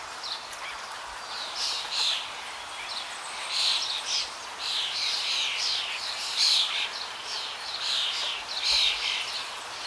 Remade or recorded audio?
recorded